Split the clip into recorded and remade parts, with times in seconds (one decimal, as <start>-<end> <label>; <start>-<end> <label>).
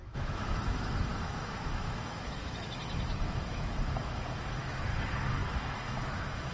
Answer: 0.0-6.5 remade